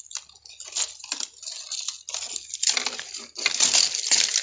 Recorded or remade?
recorded